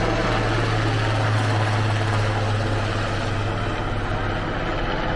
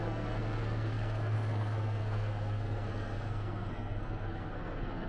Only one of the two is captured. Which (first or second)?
first